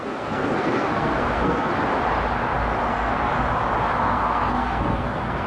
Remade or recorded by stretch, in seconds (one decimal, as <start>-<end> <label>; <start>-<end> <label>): 0.0-1.7 remade; 1.7-2.9 recorded; 2.9-3.3 remade; 3.3-4.0 recorded; 4.0-5.5 remade